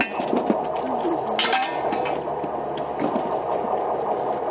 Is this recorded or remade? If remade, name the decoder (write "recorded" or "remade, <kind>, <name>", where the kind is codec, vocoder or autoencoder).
recorded